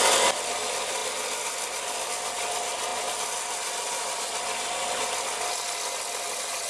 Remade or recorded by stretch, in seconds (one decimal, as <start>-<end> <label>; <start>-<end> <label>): 0.0-6.7 recorded